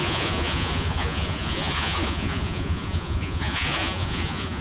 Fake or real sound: fake